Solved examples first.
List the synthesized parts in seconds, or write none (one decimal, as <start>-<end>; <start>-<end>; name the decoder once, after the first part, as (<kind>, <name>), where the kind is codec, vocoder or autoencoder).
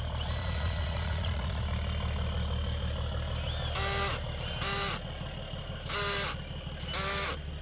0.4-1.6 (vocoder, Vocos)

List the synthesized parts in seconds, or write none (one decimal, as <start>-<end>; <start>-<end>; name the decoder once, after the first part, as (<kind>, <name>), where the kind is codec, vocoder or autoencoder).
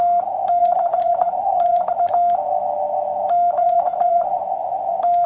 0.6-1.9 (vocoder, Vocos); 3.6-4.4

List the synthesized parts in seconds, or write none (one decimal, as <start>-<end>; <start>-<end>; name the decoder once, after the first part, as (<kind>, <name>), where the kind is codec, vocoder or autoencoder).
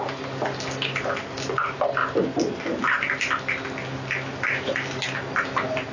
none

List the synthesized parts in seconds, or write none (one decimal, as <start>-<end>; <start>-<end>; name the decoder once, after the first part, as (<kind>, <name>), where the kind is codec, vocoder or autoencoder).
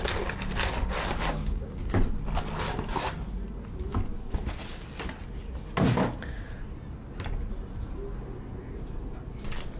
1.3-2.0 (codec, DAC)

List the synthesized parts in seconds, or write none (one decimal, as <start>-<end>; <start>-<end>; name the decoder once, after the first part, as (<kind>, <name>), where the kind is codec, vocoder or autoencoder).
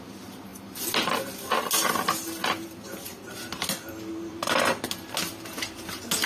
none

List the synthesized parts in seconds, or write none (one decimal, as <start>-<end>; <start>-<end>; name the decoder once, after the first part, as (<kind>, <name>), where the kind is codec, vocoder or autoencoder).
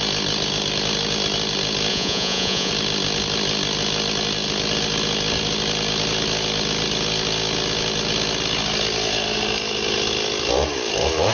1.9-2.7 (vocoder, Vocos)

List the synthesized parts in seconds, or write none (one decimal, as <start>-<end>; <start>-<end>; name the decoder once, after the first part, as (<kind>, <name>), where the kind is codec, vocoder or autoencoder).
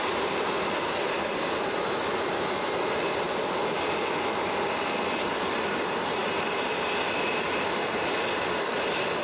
none